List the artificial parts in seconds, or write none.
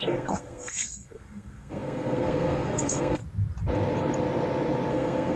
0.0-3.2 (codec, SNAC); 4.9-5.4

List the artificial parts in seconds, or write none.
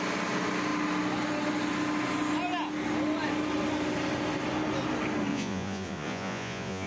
5.3-6.9 (vocoder, Vocos)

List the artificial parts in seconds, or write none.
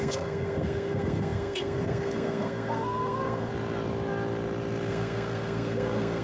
0.0-3.5 (codec, SNAC); 4.9-6.2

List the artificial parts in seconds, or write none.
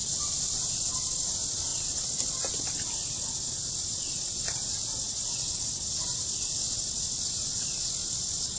none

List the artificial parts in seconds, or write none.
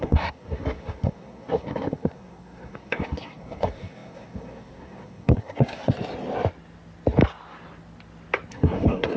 0.0-5.9 (codec, SNAC); 8.5-9.2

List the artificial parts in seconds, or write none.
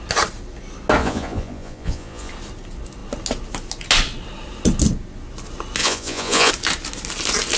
1.0-2.3 (vocoder, Vocos); 5.8-6.5